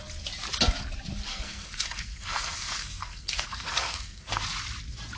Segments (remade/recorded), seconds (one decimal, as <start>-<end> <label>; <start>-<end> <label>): 0.0-1.3 recorded; 1.3-4.4 remade; 4.4-5.2 recorded